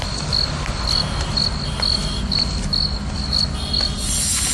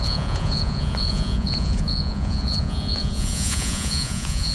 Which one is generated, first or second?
second